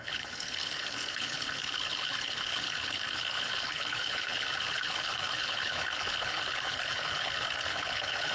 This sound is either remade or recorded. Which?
remade